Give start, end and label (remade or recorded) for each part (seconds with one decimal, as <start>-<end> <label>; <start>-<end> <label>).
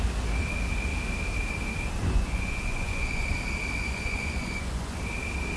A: 0.0-2.0 recorded; 2.0-3.3 remade; 3.3-3.8 recorded; 3.8-5.0 remade; 5.0-5.6 recorded